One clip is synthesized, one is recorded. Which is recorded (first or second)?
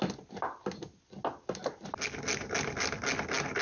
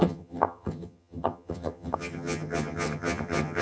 first